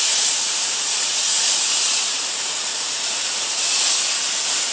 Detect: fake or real fake